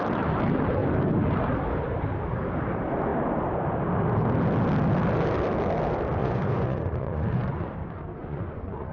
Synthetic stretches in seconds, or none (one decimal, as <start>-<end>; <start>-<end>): 6.2-7.7; 8.2-8.9